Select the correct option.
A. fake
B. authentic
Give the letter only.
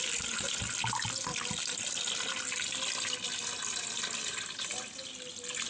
B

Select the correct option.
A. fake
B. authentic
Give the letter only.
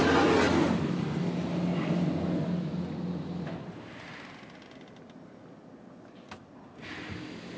B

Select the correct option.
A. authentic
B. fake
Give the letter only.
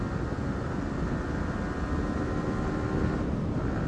A